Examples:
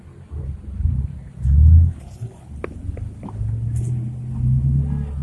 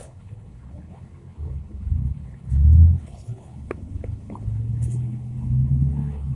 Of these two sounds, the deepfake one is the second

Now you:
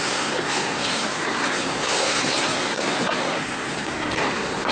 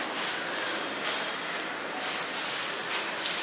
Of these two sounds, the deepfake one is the first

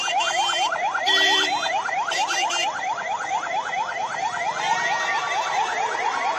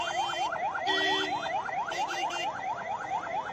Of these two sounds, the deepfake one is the first